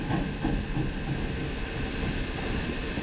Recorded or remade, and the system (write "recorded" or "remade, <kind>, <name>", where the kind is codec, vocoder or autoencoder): recorded